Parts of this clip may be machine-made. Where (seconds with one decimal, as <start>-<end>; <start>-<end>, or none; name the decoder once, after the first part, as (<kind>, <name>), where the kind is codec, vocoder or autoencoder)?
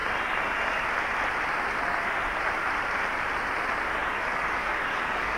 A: 4.0-5.4 (codec, DAC)